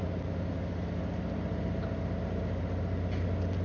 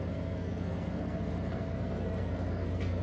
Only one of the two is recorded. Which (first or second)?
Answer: first